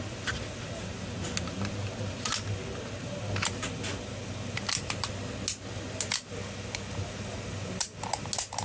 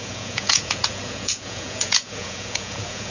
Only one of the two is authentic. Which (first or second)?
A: first